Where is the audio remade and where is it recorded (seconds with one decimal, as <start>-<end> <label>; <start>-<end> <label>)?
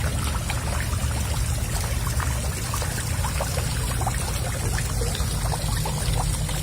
0.0-6.6 recorded